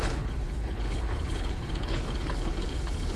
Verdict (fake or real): fake